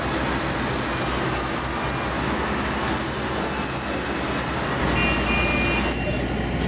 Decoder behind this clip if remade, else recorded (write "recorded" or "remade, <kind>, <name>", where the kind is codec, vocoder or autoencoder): recorded